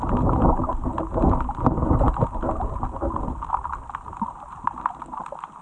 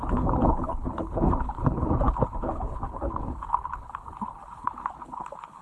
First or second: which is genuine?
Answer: first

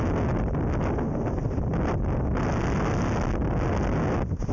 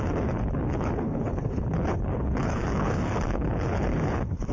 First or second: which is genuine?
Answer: first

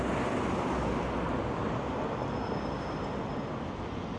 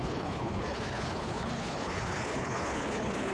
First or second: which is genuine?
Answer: first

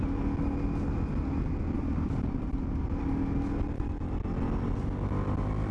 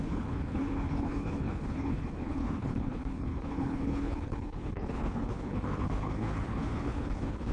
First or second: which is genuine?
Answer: first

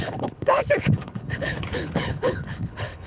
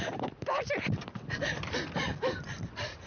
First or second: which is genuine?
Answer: second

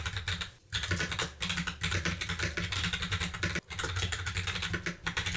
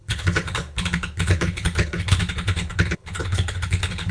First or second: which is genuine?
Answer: first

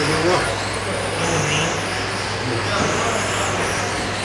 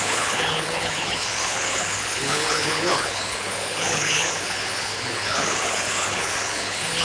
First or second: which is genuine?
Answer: first